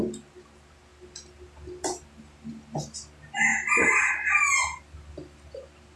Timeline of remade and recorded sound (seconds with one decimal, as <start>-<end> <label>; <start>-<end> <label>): 0.0-6.0 recorded